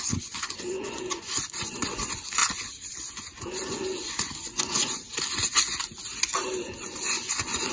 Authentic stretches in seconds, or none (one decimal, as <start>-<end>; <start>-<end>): 2.4-3.1; 5.0-6.8